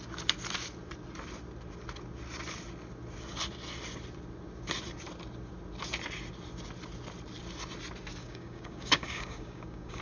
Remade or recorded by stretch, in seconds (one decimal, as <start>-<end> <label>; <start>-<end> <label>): 0.0-8.2 recorded; 8.2-10.0 remade